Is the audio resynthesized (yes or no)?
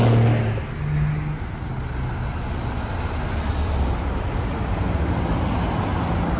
no